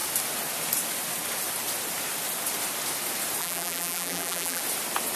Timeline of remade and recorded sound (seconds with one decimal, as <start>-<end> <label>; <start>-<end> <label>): 0.0-3.4 recorded; 3.4-4.6 remade; 4.6-5.2 recorded

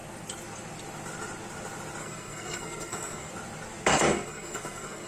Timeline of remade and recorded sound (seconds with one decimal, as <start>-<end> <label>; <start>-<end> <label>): 0.0-2.0 recorded; 2.0-3.3 remade; 3.3-3.9 recorded; 3.9-5.1 remade

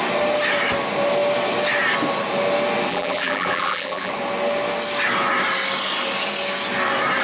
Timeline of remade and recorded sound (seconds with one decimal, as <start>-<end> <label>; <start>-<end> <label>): 0.0-2.9 recorded; 2.9-4.1 remade; 4.1-7.2 recorded

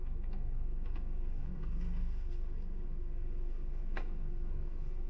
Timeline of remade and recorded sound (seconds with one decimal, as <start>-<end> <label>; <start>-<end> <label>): 0.0-5.1 remade

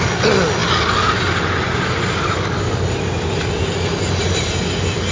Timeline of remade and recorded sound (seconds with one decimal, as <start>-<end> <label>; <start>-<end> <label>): 0.0-5.1 recorded

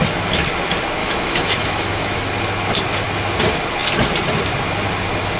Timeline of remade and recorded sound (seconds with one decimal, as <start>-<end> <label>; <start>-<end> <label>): 0.0-1.0 recorded; 1.0-2.3 remade; 2.3-5.4 recorded

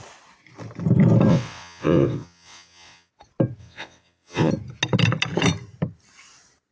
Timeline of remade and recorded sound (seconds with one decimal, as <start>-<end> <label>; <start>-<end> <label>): 0.0-1.3 recorded; 1.3-3.1 remade; 3.1-3.6 recorded; 3.6-4.5 remade; 4.5-6.7 recorded